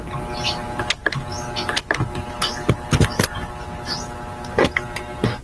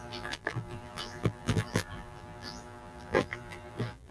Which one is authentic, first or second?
first